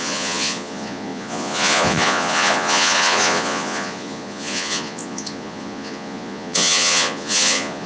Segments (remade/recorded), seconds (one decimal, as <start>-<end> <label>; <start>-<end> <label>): 0.0-7.9 remade